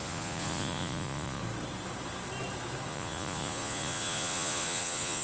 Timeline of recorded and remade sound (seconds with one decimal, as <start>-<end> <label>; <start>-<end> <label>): 0.0-1.4 remade; 1.4-2.9 recorded; 2.9-5.2 remade